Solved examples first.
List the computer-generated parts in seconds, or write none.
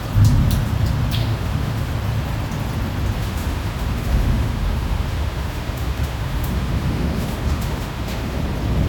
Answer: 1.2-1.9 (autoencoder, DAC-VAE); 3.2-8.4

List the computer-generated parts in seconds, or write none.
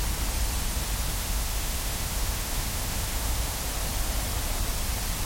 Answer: 1.1-3.6 (autoencoder, DAC-VAE)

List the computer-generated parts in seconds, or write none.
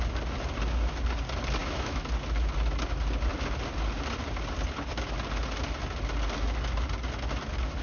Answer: 1.6-2.1 (autoencoder, DAC-VAE)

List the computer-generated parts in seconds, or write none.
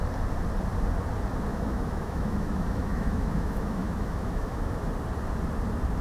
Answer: 1.5-4.9 (autoencoder, DAC-VAE)